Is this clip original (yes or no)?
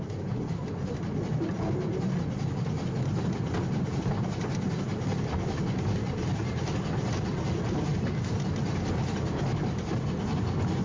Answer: yes